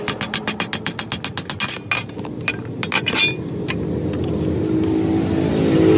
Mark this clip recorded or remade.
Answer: recorded